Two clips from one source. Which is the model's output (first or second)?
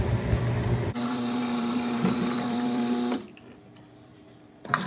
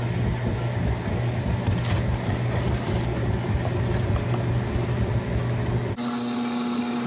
first